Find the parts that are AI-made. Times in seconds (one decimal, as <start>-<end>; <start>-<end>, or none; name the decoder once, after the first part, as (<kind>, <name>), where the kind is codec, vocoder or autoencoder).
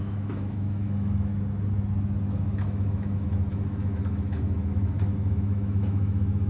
0.0-1.3 (autoencoder, DAC-VAE); 2.3-6.5